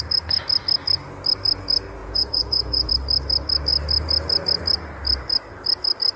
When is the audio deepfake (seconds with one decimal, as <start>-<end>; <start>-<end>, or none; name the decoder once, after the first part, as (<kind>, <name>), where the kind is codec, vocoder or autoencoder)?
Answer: 2.0-2.9 (vocoder, Vocos)